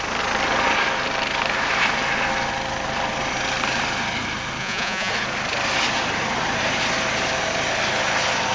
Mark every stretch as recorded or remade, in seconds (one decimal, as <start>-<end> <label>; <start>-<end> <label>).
0.0-4.6 recorded; 4.6-5.1 remade; 5.1-8.5 recorded